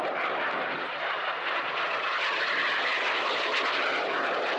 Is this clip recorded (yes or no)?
yes